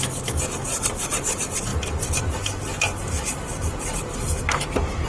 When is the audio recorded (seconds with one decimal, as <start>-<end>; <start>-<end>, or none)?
0.0-5.1